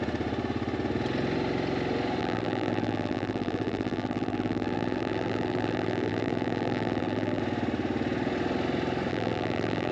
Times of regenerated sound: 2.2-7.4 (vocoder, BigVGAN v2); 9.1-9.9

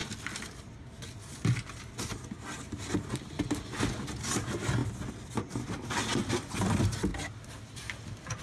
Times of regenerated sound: 0.0-0.9 (vocoder, BigVGAN v2); 7.1-8.4

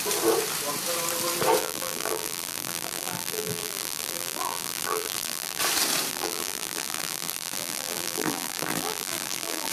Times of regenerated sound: 1.6-5.6 (vocoder, BigVGAN v2); 6.1-9.7

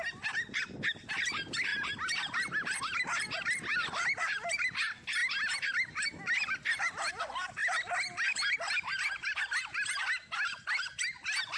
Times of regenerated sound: none

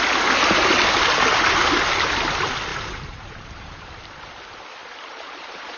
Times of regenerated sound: 2.7-3.9 (vocoder, BigVGAN v2); 4.8-5.8

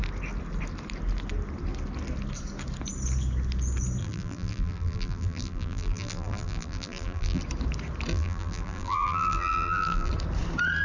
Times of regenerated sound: 4.0-7.4 (vocoder, BigVGAN v2); 8.1-10.1